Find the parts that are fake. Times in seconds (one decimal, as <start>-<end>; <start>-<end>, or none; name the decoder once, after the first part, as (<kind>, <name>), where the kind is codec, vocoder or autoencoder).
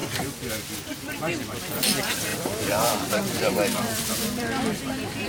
2.3-4.8 (vocoder, BigVGAN v2)